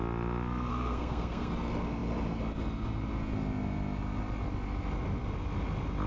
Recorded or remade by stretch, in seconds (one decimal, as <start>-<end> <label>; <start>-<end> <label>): 0.0-0.7 recorded; 0.7-1.5 remade; 1.5-6.1 recorded